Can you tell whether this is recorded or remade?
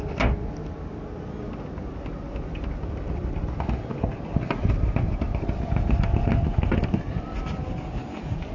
recorded